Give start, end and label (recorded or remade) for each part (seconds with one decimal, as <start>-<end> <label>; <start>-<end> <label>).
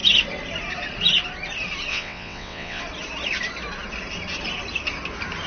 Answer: 0.0-1.9 recorded; 1.9-2.8 remade; 2.8-5.5 recorded